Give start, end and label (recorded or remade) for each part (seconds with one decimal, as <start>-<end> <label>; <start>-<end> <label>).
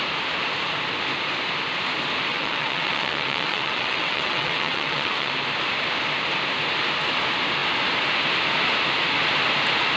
0.0-2.3 recorded; 2.3-5.3 remade; 5.3-10.0 recorded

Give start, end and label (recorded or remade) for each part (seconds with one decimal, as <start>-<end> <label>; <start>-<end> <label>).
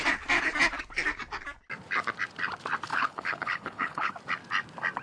0.0-2.9 recorded; 2.9-4.1 remade; 4.1-5.0 recorded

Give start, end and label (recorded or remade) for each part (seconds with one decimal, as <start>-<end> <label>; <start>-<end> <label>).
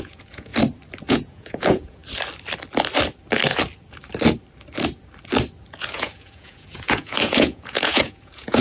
0.0-0.5 remade; 0.5-1.1 recorded; 1.1-2.0 remade; 2.0-5.9 recorded; 5.9-8.6 remade